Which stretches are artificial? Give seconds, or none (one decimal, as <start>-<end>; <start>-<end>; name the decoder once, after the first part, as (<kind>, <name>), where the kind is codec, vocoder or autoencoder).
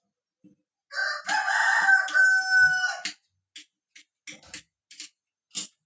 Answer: none